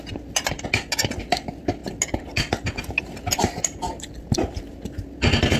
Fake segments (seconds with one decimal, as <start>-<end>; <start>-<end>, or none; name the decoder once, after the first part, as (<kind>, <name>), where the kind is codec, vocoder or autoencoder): none